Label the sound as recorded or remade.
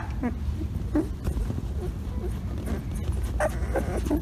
recorded